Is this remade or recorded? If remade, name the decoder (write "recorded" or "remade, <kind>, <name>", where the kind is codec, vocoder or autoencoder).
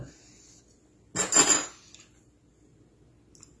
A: recorded